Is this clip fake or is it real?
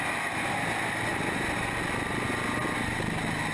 real